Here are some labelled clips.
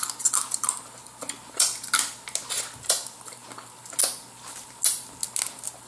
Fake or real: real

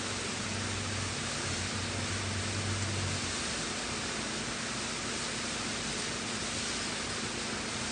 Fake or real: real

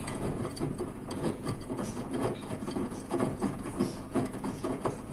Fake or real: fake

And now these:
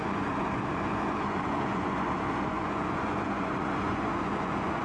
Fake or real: fake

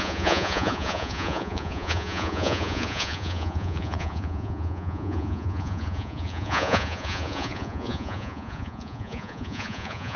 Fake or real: fake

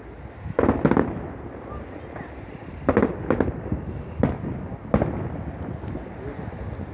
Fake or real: real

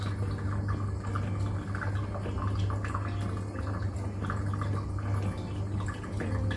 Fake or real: real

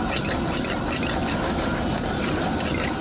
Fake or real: real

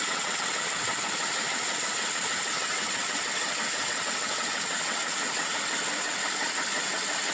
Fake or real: fake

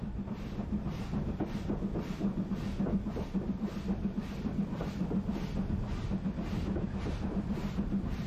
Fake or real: real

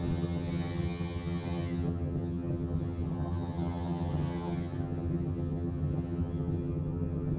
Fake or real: fake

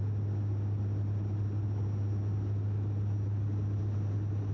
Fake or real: real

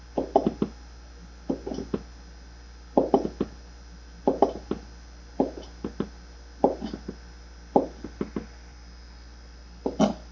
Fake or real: real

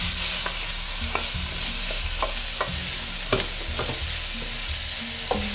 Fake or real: real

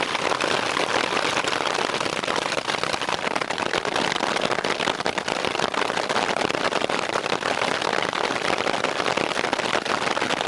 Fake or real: real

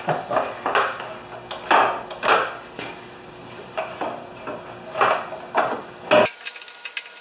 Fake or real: real